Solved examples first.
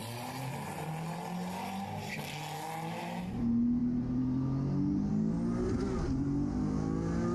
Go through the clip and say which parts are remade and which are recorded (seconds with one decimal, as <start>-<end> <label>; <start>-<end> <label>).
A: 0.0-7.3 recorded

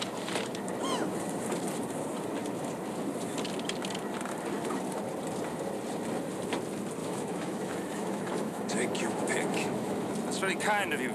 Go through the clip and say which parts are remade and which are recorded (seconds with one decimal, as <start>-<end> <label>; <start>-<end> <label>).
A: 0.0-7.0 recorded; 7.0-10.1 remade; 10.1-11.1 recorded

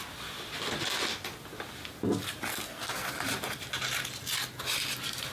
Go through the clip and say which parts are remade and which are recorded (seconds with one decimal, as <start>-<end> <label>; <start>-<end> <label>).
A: 0.0-2.5 recorded; 2.5-3.1 remade; 3.1-5.3 recorded